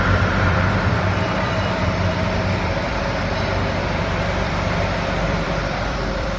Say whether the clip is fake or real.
fake